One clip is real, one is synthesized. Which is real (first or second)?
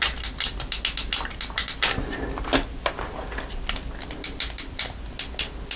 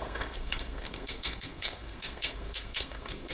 first